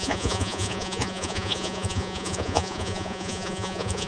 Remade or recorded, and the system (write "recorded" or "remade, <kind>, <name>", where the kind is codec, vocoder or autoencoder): remade, vocoder, Vocos